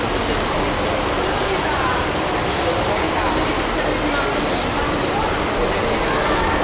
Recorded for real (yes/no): yes